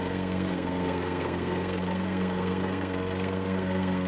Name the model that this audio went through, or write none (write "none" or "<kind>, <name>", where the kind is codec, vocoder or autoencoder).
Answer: codec, SNAC